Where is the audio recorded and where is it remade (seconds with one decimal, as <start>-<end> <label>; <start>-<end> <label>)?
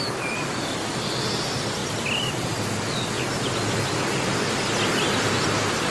0.0-5.9 recorded